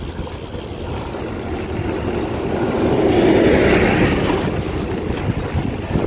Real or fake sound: real